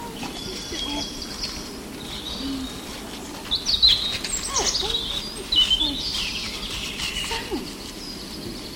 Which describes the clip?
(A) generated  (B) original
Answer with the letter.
B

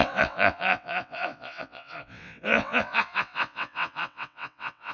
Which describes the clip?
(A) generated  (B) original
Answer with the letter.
A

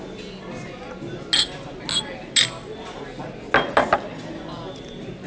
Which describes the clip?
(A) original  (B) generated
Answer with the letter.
A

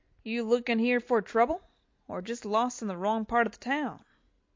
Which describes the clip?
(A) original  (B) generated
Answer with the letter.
A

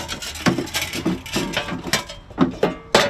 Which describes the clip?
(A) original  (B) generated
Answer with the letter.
A